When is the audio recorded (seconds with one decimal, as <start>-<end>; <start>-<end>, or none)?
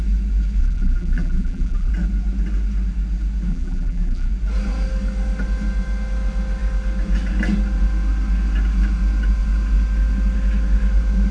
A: 0.0-0.6; 1.9-3.5; 4.3-11.3